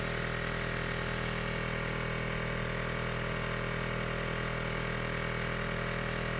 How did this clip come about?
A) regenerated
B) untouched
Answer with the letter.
B